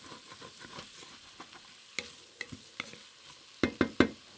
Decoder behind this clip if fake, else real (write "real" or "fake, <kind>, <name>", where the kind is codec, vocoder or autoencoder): real